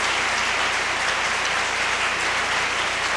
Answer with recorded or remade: recorded